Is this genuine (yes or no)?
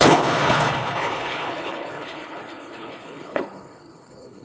no